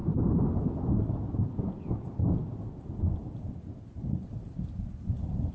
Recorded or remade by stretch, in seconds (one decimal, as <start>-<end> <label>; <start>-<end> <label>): 0.0-5.5 recorded